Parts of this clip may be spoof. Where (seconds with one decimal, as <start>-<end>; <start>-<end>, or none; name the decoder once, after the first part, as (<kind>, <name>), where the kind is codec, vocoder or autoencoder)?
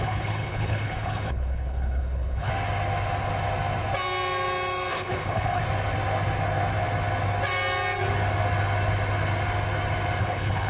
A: 0.0-2.5 (codec, HILCodec); 4.9-5.6; 10.2-10.7